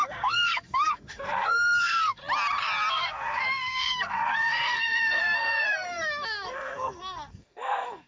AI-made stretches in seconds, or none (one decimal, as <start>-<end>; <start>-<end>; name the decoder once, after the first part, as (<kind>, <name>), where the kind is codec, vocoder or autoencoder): 0.0-2.2 (codec, SNAC); 2.9-8.1

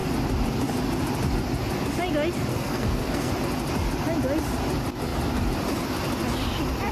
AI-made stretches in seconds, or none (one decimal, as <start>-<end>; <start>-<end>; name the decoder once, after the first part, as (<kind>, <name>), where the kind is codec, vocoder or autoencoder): 2.5-3.3 (codec, SNAC)

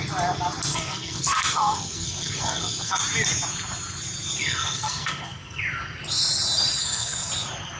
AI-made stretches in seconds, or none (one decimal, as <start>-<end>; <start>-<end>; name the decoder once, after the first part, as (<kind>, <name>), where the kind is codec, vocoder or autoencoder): 0.7-3.0 (codec, SNAC); 4.4-5.6; 6.8-7.3

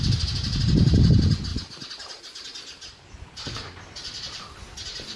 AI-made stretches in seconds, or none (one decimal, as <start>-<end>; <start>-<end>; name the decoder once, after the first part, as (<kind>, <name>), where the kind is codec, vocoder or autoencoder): none

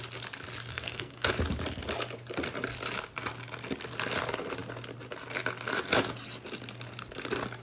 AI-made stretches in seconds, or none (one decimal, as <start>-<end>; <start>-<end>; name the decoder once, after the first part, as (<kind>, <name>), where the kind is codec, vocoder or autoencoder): 0.7-1.3 (codec, SNAC)